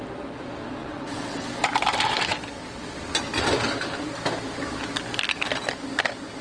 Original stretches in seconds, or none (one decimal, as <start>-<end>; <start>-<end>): 0.0-0.8; 1.5-6.4